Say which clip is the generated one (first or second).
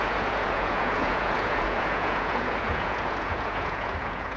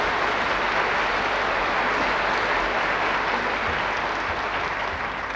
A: first